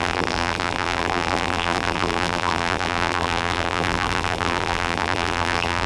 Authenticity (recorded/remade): remade